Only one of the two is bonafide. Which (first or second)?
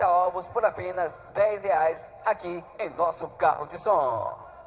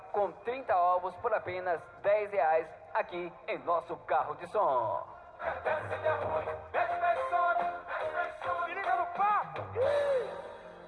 second